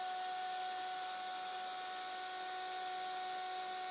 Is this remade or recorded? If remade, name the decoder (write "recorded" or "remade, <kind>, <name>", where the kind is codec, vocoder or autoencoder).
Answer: recorded